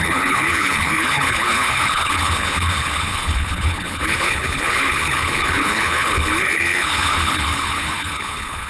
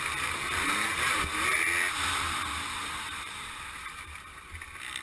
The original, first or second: second